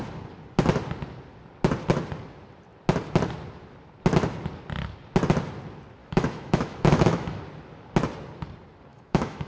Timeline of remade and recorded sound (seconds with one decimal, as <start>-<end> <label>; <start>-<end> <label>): 0.0-6.0 recorded; 6.0-7.4 remade; 7.4-8.9 recorded; 8.9-9.5 remade